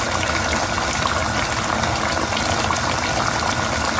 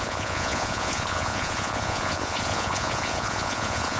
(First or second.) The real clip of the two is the first